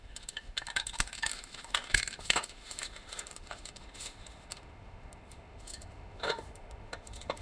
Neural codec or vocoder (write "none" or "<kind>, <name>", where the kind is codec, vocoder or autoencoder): autoencoder, DAC-VAE